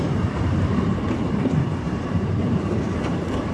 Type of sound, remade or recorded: remade